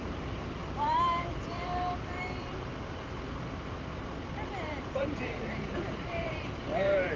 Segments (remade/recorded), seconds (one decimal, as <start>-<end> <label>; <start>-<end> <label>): 0.0-7.2 remade

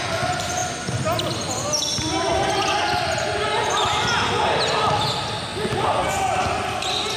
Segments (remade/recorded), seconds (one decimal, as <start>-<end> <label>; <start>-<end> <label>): 0.0-7.2 recorded

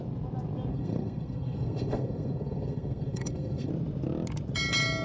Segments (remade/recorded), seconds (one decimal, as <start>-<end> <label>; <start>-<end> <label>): 0.0-0.7 recorded; 0.7-3.7 remade; 3.7-5.0 recorded

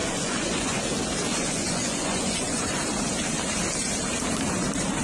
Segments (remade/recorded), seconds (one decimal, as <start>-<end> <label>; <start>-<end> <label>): 0.0-0.8 remade; 0.8-1.3 recorded; 1.3-2.8 remade; 2.8-5.0 recorded

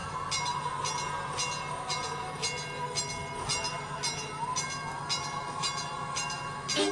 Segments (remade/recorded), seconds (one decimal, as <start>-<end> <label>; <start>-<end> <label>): 0.0-6.9 recorded

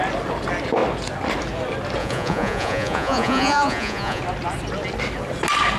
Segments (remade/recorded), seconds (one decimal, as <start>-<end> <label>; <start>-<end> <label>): 0.0-2.0 recorded; 2.0-4.2 remade; 4.2-5.8 recorded

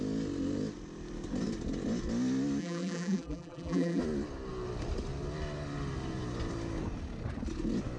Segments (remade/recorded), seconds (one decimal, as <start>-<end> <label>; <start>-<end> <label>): 0.0-2.6 recorded; 2.6-4.0 remade; 4.0-8.0 recorded